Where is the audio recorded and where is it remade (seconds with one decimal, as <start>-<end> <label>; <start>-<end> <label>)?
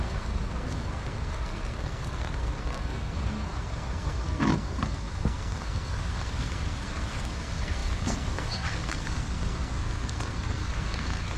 0.0-11.4 remade